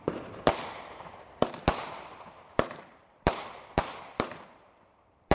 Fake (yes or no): yes